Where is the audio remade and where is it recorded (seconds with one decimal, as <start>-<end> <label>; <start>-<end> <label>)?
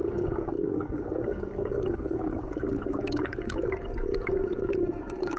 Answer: 0.0-5.4 remade